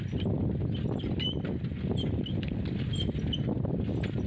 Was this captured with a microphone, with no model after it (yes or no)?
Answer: yes